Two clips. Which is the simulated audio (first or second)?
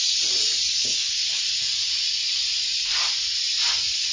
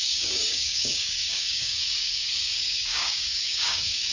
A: second